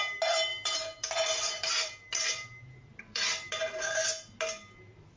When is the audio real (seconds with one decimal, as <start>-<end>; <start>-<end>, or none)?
0.0-0.5; 3.6-5.2